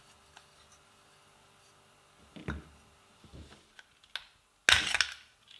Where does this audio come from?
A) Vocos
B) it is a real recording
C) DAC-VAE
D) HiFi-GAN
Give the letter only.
B